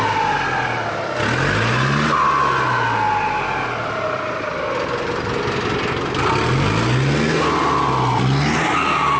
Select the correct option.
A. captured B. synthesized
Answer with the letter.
A